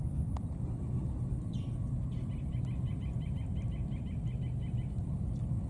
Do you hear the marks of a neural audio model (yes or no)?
no